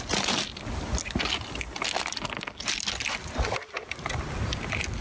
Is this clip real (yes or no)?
yes